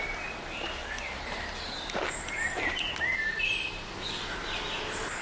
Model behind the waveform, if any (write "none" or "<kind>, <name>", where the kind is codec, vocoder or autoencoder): none